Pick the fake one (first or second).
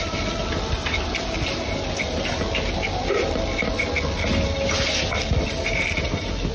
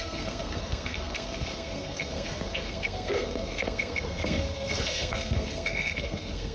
second